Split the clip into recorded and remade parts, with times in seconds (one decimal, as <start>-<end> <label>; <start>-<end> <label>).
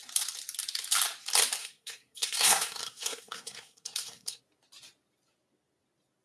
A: 0.0-1.6 recorded; 1.6-4.4 remade; 4.4-6.2 recorded